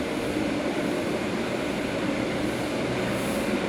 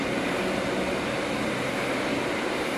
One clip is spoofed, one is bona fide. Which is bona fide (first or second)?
second